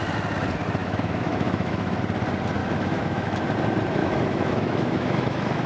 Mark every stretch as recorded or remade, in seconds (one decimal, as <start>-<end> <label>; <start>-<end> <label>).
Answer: 0.0-0.8 recorded; 0.8-2.0 remade; 2.0-2.6 recorded; 2.6-3.4 remade; 3.4-4.0 recorded; 4.0-5.7 remade